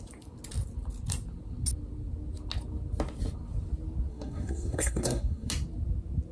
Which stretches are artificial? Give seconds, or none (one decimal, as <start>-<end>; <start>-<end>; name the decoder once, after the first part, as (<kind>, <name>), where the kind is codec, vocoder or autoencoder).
4.1-5.5 (codec, SNAC)